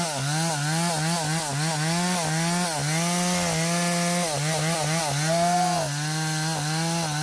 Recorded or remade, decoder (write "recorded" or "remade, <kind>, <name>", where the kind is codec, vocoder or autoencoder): recorded